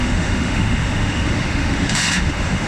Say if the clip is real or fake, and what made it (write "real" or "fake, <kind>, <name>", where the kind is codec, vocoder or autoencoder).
fake, autoencoder, DAC-VAE